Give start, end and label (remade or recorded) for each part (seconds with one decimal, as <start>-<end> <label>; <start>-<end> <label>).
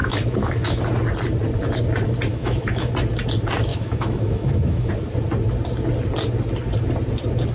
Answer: 0.0-0.8 remade; 0.8-2.3 recorded; 2.3-2.9 remade; 2.9-3.7 recorded; 3.7-4.9 remade; 4.9-7.5 recorded